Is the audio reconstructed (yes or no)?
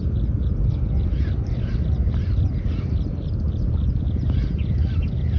no